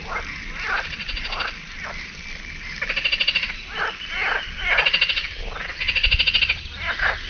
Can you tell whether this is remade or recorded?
recorded